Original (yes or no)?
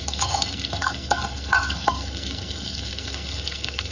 no